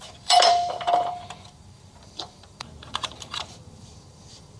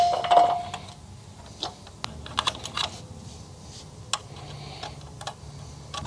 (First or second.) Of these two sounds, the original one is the second